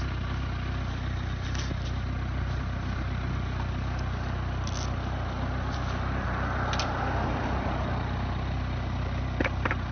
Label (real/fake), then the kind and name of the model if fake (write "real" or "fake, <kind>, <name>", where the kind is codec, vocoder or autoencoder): real